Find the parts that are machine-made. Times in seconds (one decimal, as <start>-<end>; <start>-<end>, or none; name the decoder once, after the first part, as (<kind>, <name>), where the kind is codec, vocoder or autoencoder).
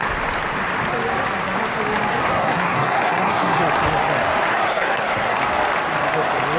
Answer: 2.2-3.6 (codec, SNAC); 4.5-5.4